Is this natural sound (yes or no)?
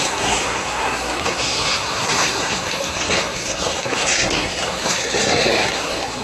no